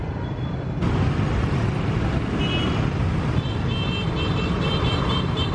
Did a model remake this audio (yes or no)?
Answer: no